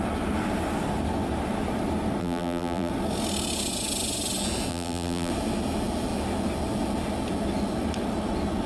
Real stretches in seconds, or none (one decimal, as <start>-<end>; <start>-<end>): 0.0-2.2; 2.9-4.7; 5.3-8.7